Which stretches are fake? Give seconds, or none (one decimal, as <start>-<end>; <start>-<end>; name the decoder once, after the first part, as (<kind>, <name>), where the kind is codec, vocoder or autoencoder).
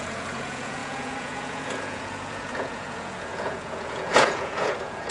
0.0-5.1 (vocoder, Vocos)